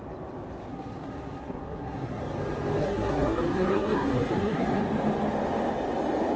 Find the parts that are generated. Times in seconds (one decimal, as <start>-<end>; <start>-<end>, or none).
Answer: 0.7-2.2; 2.8-4.8